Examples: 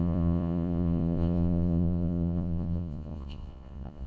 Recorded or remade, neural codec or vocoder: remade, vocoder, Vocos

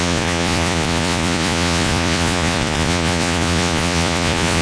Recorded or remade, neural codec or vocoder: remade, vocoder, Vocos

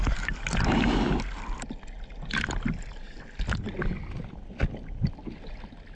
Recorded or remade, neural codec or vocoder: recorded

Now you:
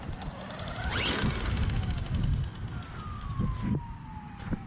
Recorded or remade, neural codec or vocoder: recorded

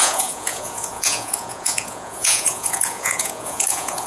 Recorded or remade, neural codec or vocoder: remade, vocoder, Vocos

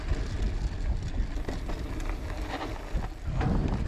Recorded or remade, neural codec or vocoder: recorded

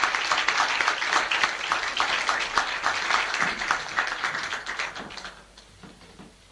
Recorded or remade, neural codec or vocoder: recorded